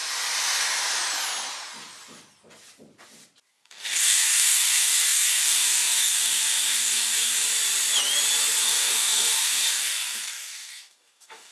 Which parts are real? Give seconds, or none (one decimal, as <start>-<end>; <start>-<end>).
0.0-3.5; 7.5-8.6